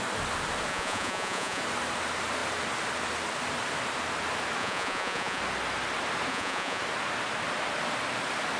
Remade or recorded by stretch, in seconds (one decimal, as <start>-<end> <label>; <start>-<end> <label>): 0.0-0.7 recorded; 0.7-1.6 remade; 1.6-4.6 recorded; 4.6-5.4 remade; 5.4-6.3 recorded; 6.3-6.8 remade; 6.8-8.6 recorded